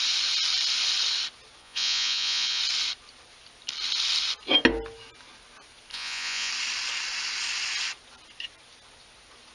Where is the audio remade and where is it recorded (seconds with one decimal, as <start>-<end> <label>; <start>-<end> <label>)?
0.0-1.6 recorded; 1.6-2.6 remade; 2.6-5.9 recorded; 5.9-6.5 remade; 6.5-9.5 recorded